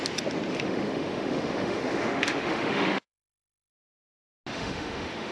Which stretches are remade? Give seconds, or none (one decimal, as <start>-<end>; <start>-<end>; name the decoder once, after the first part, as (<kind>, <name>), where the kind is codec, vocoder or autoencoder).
0.5-3.7 (autoencoder, DAC-VAE); 4.5-5.3